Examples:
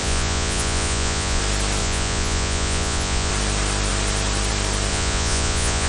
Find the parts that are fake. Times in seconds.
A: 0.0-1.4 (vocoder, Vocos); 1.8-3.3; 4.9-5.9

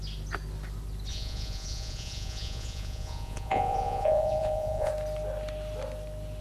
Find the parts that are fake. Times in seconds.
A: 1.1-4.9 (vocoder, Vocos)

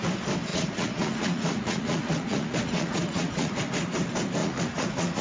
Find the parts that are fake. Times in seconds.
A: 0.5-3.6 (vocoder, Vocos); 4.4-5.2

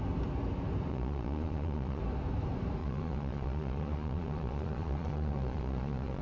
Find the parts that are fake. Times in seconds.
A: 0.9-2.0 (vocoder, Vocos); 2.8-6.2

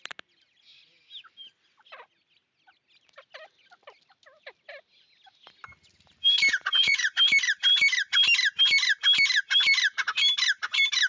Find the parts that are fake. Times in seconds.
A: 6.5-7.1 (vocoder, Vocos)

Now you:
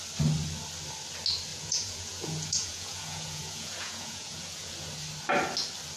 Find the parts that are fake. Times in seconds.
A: 1.5-4.9 (vocoder, Vocos)

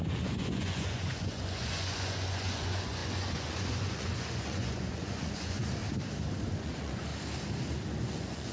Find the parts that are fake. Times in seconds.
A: 0.0-5.8 (vocoder, Vocos); 6.5-7.1; 8.1-8.5

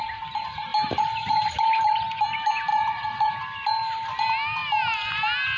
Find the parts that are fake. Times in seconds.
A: 2.7-3.3 (vocoder, Vocos)